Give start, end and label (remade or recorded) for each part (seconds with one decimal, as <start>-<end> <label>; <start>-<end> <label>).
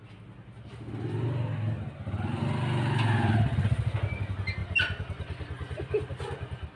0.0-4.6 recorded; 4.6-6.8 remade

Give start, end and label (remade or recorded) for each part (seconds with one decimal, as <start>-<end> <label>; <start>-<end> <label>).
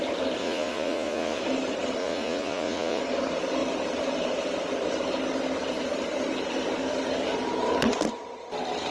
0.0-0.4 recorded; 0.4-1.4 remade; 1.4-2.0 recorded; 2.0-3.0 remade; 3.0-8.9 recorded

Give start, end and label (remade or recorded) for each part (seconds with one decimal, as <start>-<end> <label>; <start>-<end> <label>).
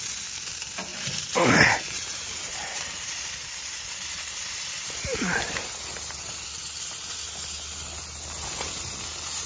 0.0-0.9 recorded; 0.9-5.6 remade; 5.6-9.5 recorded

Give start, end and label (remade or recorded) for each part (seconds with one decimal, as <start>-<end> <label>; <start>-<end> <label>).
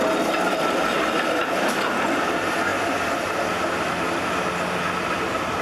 0.0-5.6 recorded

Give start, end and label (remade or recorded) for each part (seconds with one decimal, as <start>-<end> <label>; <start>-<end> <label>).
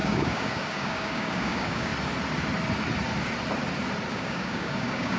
0.0-1.9 remade; 1.9-4.1 recorded; 4.1-5.2 remade